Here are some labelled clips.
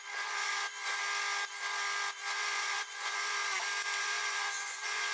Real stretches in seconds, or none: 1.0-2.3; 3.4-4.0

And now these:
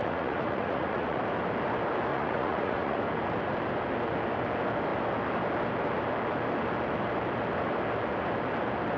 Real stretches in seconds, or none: 1.2-2.1; 3.0-9.0

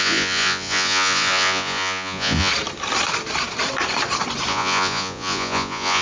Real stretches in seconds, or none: 2.5-4.5

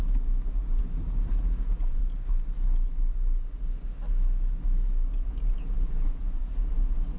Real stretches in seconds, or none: 0.8-1.3; 2.0-5.3

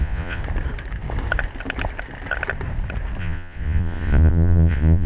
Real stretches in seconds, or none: 0.4-3.2

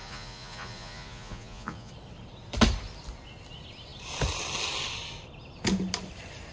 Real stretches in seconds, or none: 1.9-6.5